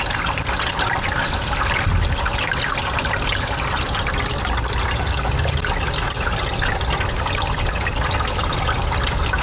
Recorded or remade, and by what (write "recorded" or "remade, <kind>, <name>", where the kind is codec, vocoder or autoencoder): recorded